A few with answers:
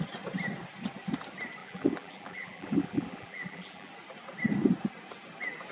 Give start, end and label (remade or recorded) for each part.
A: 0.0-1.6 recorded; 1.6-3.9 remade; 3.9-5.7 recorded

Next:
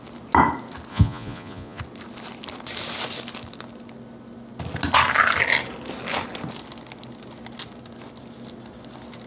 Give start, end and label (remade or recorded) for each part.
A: 0.0-0.9 recorded; 0.9-1.8 remade; 1.8-9.3 recorded

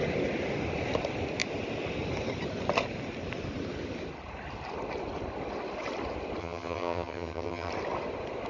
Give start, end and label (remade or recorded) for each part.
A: 0.0-6.4 recorded; 6.4-7.7 remade; 7.7-8.5 recorded